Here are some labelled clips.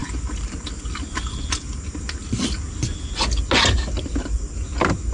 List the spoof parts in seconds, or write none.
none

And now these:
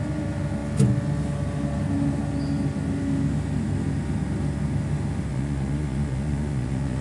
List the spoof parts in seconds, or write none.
5.3-7.0

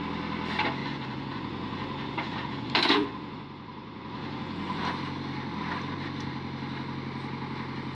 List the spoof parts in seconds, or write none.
0.8-4.8